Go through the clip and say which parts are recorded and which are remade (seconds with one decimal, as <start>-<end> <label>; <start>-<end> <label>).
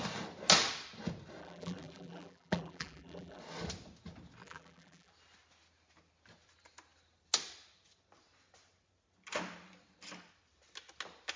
0.0-1.4 recorded; 1.4-3.4 remade; 3.4-4.4 recorded; 4.4-5.1 remade; 5.1-11.4 recorded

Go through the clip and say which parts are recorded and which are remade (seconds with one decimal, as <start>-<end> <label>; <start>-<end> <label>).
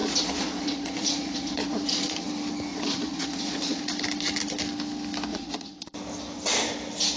0.0-2.3 remade; 2.3-2.7 recorded; 2.7-3.8 remade; 3.8-5.3 recorded; 5.3-5.9 remade; 5.9-7.2 recorded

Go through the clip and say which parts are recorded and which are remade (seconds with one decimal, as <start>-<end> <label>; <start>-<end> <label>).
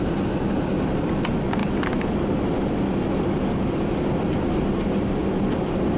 0.0-6.0 recorded